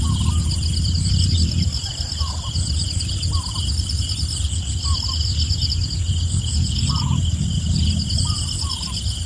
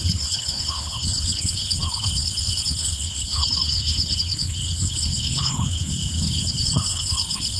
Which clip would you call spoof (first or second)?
second